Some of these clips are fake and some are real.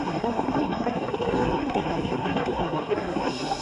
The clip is fake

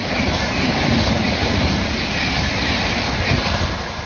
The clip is real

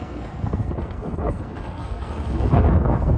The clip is fake